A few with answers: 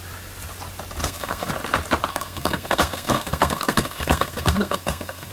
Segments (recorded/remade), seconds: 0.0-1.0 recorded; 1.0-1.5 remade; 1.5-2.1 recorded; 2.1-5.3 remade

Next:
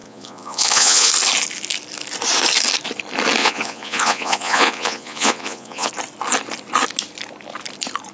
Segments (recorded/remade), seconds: 0.0-1.1 remade; 1.1-3.4 recorded; 3.4-5.9 remade; 5.9-8.1 recorded

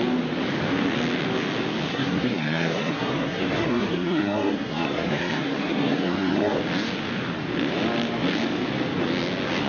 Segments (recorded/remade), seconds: 0.0-1.9 recorded; 1.9-6.6 remade; 6.6-9.7 recorded

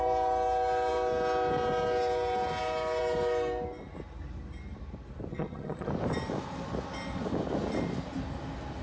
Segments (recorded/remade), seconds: 0.0-5.3 recorded; 5.3-5.9 remade; 5.9-8.8 recorded

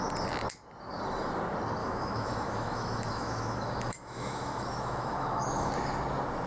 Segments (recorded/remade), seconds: 0.0-1.8 recorded; 1.8-5.7 remade; 5.7-6.5 recorded